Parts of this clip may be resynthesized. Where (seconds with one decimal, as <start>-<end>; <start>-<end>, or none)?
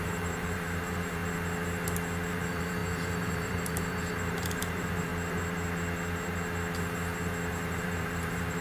0.0-1.2; 2.3-5.1; 7.5-8.6